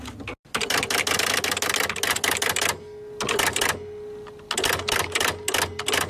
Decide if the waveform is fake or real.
real